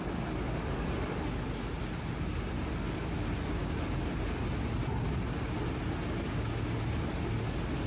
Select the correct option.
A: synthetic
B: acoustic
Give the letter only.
B